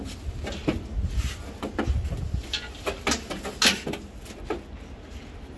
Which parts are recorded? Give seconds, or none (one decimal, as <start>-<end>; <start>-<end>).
0.0-5.6